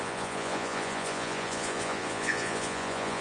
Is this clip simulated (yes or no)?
yes